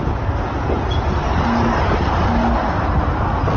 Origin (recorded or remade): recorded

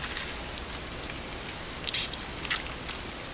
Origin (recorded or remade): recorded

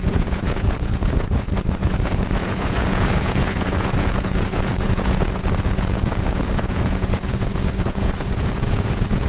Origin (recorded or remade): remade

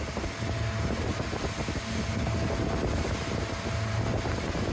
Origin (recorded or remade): recorded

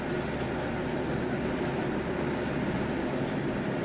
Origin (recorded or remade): recorded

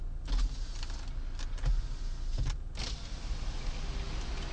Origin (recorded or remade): recorded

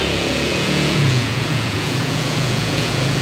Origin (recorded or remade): remade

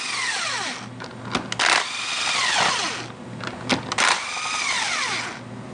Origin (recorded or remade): recorded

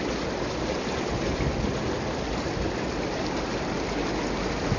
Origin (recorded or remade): recorded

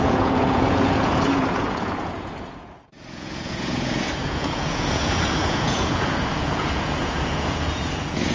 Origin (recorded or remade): remade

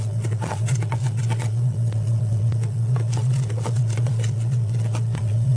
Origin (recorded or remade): remade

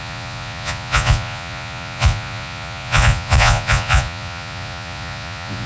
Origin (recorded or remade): remade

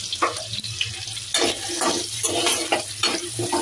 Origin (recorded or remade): recorded